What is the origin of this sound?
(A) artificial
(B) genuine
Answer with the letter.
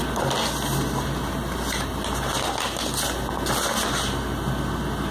B